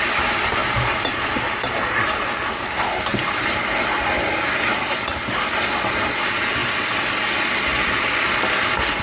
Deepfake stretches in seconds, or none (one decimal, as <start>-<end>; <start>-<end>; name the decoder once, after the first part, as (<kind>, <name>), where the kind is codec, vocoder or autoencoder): 0.6-2.0 (vocoder, BigVGAN v2); 7.8-9.0